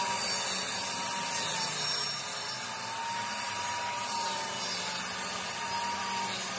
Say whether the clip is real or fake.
real